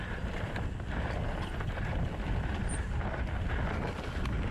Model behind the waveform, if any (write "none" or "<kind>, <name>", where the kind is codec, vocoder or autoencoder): none